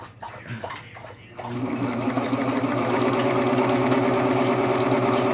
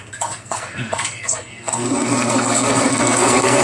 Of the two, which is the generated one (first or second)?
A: second